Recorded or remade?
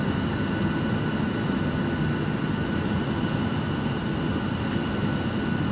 recorded